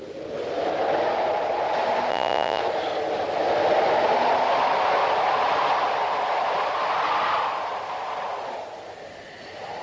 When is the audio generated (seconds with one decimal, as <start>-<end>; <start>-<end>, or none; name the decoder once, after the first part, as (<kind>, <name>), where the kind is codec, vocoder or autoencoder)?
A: 2.1-2.6 (vocoder, Vocos)